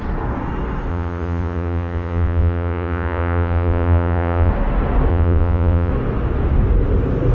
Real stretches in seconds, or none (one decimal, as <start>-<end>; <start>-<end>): 0.0-0.9; 4.5-5.1; 5.9-7.3